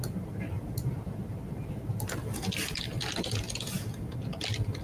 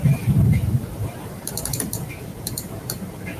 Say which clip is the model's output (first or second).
second